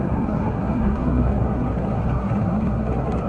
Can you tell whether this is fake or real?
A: fake